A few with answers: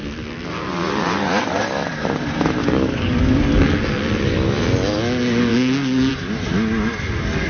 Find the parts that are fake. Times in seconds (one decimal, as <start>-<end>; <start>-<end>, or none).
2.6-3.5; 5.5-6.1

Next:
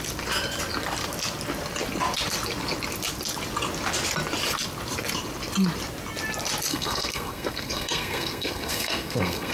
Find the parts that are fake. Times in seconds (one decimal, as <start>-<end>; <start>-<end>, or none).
6.7-9.5

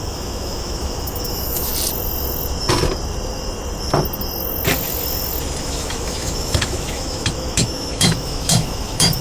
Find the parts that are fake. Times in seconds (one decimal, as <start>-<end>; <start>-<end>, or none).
0.0-1.7; 5.6-9.2

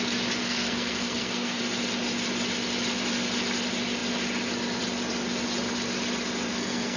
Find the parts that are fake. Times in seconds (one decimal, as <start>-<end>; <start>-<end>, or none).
0.4-1.6; 6.5-7.0

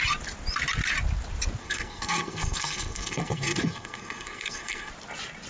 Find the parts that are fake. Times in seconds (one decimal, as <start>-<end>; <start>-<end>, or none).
1.6-4.9

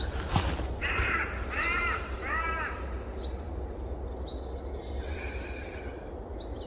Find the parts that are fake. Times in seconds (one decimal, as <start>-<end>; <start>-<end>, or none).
none

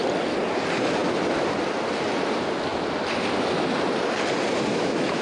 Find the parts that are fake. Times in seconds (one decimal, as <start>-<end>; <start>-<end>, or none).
4.7-5.2

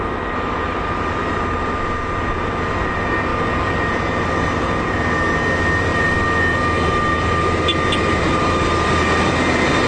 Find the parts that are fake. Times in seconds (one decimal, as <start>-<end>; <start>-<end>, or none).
none